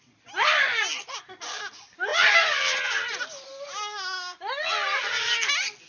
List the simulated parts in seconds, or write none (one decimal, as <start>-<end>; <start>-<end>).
none